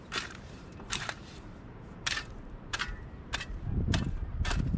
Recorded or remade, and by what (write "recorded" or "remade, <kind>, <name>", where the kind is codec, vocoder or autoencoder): remade, vocoder, BigVGAN v2